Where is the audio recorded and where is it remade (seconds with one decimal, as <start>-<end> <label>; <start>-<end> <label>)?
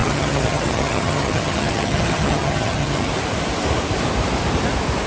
0.0-3.1 remade; 3.1-5.1 recorded